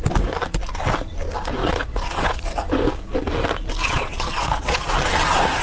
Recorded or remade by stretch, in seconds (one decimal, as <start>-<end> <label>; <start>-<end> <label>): 0.0-1.6 recorded; 1.6-2.4 remade; 2.4-3.8 recorded; 3.8-4.9 remade; 4.9-5.6 recorded

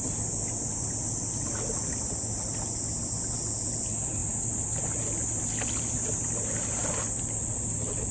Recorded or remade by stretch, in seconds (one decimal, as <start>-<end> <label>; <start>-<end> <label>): 0.0-8.1 recorded

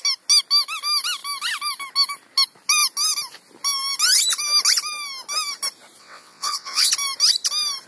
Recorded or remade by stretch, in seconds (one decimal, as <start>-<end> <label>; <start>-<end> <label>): 0.0-6.0 recorded; 6.0-6.9 remade; 6.9-7.9 recorded

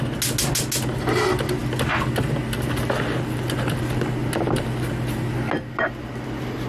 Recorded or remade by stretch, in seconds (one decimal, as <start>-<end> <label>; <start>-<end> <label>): 0.0-6.7 recorded

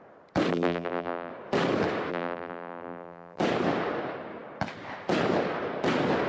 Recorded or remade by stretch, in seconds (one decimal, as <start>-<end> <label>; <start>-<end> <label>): 0.0-0.5 recorded; 0.5-1.3 remade; 1.3-2.1 recorded; 2.1-3.4 remade; 3.4-6.3 recorded

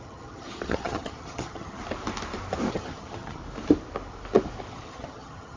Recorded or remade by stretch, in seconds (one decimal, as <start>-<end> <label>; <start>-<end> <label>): 0.0-1.8 remade; 1.8-2.7 recorded; 2.7-3.4 remade; 3.4-4.7 recorded; 4.7-5.6 remade

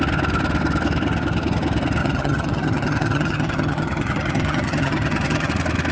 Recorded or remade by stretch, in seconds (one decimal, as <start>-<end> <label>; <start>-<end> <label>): 0.0-2.0 recorded; 2.0-5.5 remade; 5.5-5.9 recorded